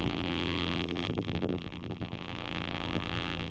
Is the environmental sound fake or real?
fake